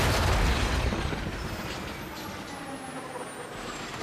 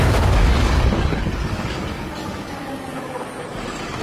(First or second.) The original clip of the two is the first